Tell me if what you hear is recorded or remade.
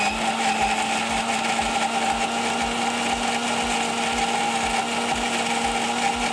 recorded